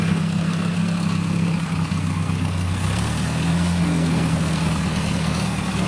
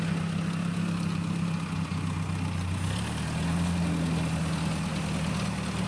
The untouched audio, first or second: second